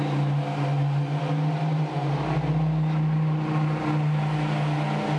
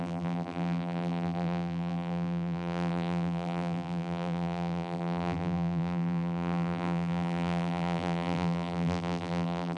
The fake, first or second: second